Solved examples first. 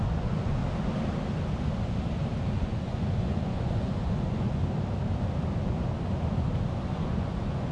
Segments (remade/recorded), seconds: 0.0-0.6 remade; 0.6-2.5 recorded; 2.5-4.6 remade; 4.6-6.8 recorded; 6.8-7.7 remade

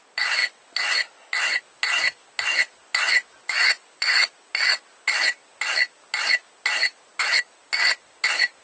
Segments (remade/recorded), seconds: 0.0-0.4 recorded; 0.4-1.6 remade; 1.6-2.8 recorded; 2.8-4.3 remade; 4.3-8.6 recorded

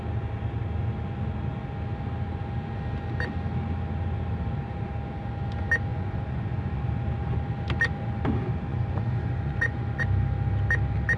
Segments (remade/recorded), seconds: 0.0-5.9 recorded; 5.9-6.8 remade; 6.8-8.7 recorded; 8.7-10.0 remade; 10.0-11.2 recorded

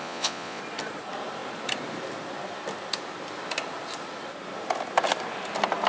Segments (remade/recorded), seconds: 0.0-0.6 remade; 0.6-5.9 recorded

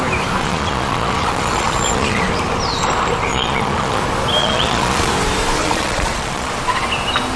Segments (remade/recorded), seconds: 0.0-0.4 recorded; 0.4-2.2 remade; 2.2-3.3 recorded; 3.3-4.0 remade; 4.0-4.4 recorded; 4.4-5.1 remade; 5.1-5.6 recorded; 5.6-6.5 remade; 6.5-7.4 recorded

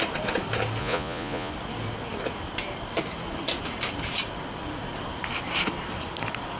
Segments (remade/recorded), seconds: 0.0-0.8 recorded; 0.8-1.5 remade; 1.5-6.6 recorded

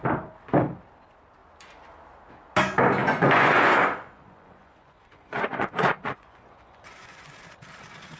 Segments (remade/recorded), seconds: 0.0-3.0 recorded; 3.0-7.4 remade; 7.4-8.2 recorded